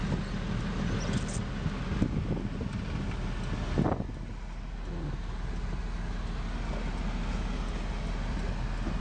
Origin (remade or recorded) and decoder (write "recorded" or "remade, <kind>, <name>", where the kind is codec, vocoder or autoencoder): recorded